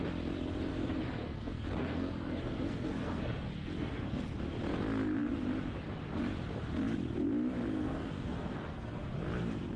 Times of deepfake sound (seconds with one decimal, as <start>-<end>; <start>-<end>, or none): 0.7-4.2; 7.7-9.1